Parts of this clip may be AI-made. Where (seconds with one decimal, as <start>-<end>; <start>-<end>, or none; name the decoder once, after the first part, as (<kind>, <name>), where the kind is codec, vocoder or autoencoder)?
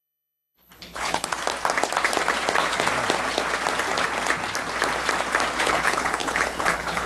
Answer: 0.0-1.3 (codec, HILCodec); 5.6-7.1